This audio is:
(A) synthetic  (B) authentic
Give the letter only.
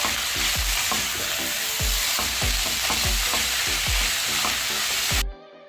B